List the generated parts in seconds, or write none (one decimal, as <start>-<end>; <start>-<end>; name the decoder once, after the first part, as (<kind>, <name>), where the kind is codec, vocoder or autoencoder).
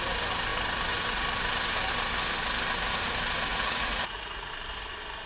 3.5-4.5 (vocoder, Vocos)